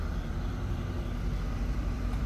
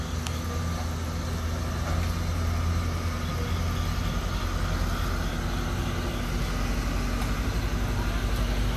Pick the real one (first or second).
second